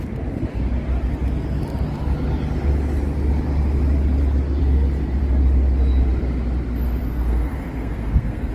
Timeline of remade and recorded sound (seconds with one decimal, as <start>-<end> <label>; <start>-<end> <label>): 0.0-7.0 recorded; 7.0-8.5 remade